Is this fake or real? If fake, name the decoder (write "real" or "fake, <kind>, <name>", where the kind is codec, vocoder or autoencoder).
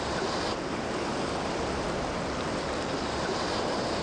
real